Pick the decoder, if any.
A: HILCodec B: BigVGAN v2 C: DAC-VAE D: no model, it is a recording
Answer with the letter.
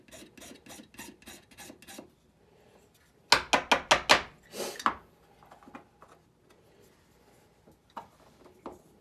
D